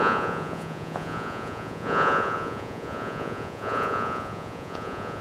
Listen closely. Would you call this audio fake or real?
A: fake